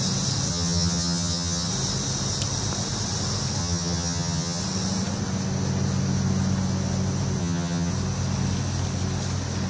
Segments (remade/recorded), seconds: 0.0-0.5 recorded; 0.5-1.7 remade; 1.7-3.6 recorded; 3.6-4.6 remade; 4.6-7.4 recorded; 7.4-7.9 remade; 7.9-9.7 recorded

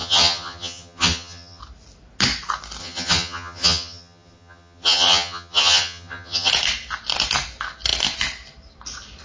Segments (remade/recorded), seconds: 0.0-1.6 remade; 1.6-2.8 recorded; 2.8-6.5 remade; 6.5-9.2 recorded

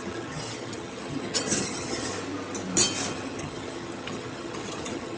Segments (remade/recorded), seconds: 0.0-2.1 remade; 2.1-3.1 recorded; 3.1-5.2 remade

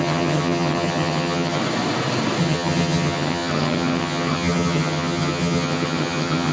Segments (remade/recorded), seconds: 0.0-1.6 remade; 1.6-2.4 recorded; 2.4-6.5 remade

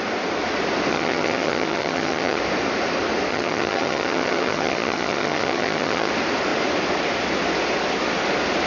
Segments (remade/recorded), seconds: 0.0-0.9 recorded; 0.9-2.4 remade; 2.4-3.3 recorded; 3.3-6.1 remade; 6.1-8.7 recorded

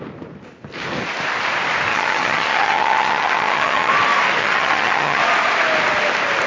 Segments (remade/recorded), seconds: 0.0-1.9 recorded; 1.9-3.9 remade; 3.9-4.4 recorded; 4.4-5.2 remade; 5.2-6.5 recorded